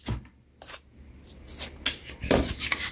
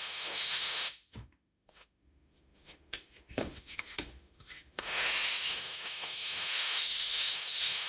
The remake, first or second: second